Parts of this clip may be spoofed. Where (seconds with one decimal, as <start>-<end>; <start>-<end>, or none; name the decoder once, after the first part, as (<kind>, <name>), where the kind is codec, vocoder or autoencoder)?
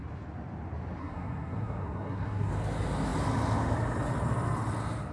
1.0-2.5 (codec, SNAC)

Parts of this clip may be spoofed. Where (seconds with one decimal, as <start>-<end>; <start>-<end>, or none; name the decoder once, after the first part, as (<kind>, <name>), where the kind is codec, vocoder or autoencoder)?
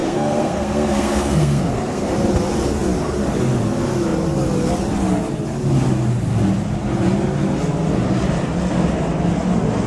0.0-2.1 (codec, SNAC)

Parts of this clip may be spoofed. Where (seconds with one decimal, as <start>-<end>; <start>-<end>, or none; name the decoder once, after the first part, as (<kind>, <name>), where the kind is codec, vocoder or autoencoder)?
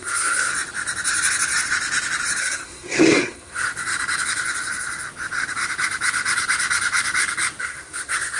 0.0-0.5 (codec, SNAC); 2.4-3.7; 7.6-8.4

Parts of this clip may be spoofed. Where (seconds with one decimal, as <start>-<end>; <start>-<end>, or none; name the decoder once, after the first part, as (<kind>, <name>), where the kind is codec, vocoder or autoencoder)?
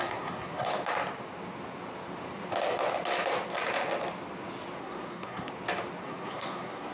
0.0-0.7 (codec, SNAC); 4.8-5.5; 6.0-6.9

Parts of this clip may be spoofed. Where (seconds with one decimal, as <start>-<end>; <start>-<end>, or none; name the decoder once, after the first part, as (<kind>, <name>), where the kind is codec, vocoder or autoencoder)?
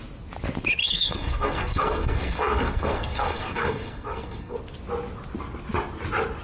0.8-4.6 (codec, SNAC)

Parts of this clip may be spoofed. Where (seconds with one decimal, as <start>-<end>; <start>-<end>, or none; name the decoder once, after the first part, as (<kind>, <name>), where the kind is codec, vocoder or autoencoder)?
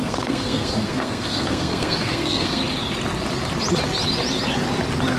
0.0-2.6 (codec, SNAC)